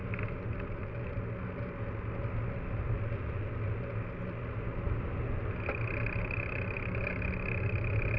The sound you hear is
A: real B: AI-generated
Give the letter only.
A